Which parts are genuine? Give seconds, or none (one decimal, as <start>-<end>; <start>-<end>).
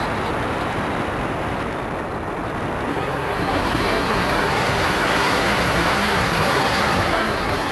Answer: 0.0-2.9